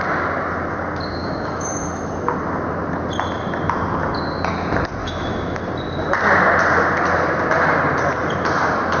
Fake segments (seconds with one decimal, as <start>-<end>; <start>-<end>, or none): 1.2-2.1; 5.0-5.6